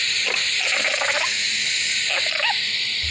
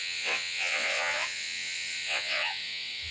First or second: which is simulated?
second